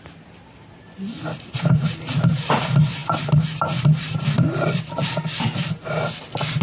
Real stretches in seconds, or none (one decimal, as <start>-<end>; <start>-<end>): 0.0-6.6